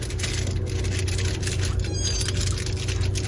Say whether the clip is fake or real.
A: real